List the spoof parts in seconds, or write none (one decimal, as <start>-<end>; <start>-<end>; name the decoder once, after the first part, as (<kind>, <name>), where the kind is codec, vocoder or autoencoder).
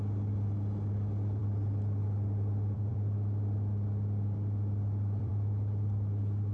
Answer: 1.4-5.3 (vocoder, BigVGAN v2)